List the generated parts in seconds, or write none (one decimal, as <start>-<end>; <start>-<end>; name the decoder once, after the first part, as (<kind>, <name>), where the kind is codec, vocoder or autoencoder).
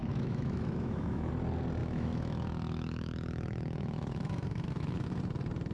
0.0-1.3 (autoencoder, DAC-VAE); 1.8-5.2